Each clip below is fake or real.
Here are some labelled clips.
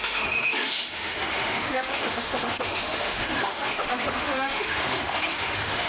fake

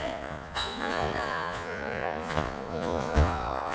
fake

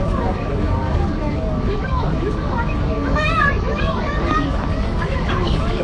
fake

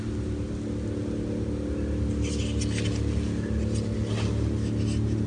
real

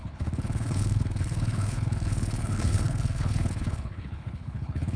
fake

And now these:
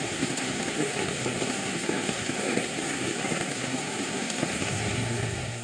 fake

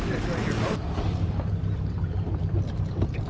real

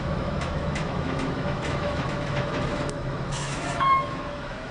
fake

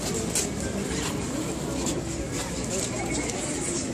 real